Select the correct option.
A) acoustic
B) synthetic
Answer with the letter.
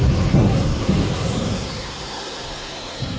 B